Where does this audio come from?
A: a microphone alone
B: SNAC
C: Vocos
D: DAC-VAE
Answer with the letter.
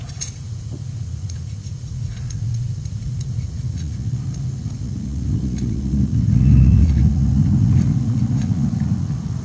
C